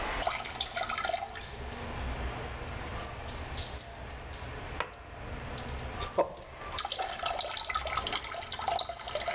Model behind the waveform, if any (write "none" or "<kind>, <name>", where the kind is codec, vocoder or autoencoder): none